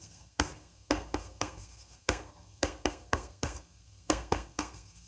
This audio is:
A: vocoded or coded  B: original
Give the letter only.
A